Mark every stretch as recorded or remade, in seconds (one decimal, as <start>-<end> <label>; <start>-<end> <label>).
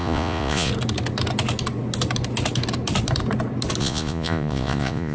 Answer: 0.0-0.7 remade; 0.7-3.8 recorded; 3.8-5.1 remade